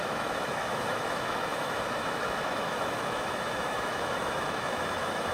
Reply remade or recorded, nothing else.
remade